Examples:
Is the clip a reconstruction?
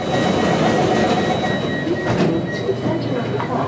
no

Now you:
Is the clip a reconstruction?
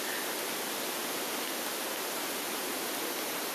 no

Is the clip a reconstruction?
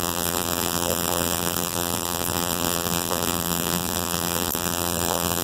yes